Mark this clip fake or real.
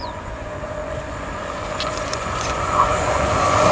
fake